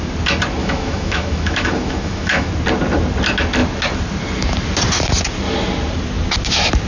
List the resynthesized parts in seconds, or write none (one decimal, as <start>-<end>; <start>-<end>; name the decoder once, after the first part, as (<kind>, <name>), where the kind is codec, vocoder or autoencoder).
0.6-2.5 (autoencoder, DAC-VAE)